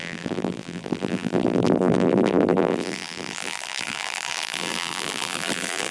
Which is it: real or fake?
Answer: fake